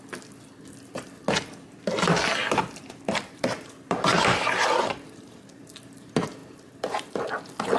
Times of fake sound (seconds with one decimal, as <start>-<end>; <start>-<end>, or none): 2.4-5.4; 6.4-7.1